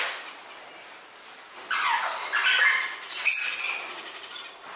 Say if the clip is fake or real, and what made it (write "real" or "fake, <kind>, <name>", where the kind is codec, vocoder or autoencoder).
real